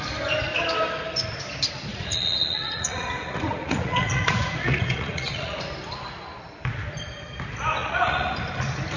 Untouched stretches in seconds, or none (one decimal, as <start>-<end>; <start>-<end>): 0.0-1.9; 5.6-7.8; 8.4-9.0